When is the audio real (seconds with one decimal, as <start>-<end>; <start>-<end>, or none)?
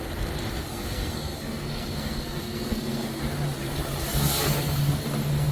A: 0.0-0.7; 3.2-4.1